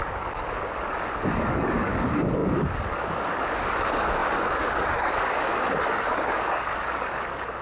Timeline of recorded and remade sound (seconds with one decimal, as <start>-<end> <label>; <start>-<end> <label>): 0.0-7.6 remade